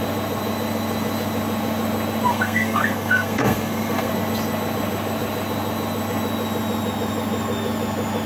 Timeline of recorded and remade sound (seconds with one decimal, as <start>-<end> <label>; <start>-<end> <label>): 0.0-2.3 recorded; 2.3-4.1 remade; 4.1-8.3 recorded